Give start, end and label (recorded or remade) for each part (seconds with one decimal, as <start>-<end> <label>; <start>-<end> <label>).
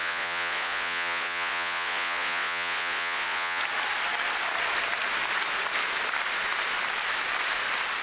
0.0-3.6 remade; 3.6-8.0 recorded